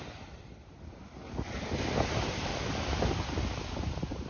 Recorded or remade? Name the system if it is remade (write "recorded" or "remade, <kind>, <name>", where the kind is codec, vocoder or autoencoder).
recorded